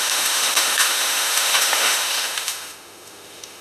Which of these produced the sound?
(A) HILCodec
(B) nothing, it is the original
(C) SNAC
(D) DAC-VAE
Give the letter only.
D